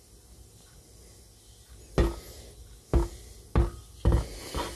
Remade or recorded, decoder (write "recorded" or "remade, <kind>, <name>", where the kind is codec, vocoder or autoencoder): recorded